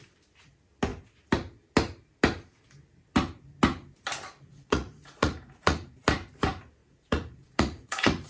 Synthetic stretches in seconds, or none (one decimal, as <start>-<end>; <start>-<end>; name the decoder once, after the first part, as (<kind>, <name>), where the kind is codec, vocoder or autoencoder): 4.5-6.0 (vocoder, Vocos); 6.8-8.3